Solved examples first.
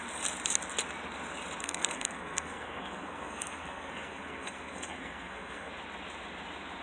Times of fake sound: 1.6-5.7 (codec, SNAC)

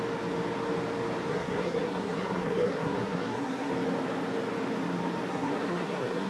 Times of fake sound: 1.3-3.7 (codec, SNAC); 5.3-6.3